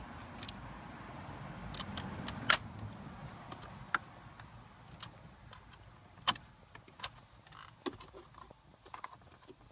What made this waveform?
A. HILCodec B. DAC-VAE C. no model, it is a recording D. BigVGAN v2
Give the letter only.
C